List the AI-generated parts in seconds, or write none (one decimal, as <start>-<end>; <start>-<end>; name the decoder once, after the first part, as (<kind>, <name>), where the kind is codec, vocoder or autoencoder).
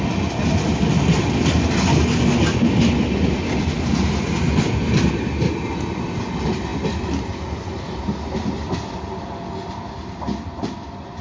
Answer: none